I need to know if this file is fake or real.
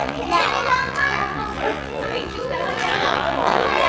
fake